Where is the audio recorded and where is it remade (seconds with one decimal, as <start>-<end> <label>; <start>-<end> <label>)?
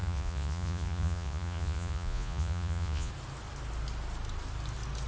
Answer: 0.0-3.1 remade; 3.1-5.1 recorded